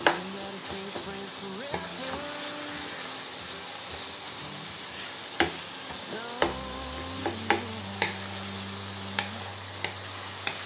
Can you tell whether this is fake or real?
real